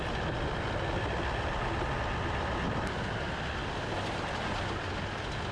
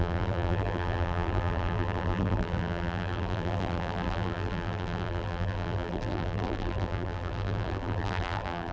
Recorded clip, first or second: first